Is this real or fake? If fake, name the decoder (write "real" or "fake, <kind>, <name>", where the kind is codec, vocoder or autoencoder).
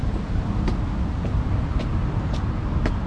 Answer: real